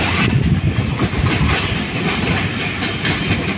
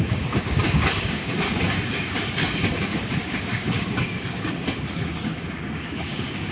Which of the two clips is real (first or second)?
first